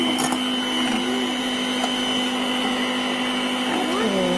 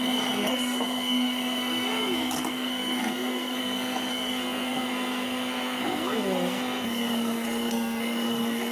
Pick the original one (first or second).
first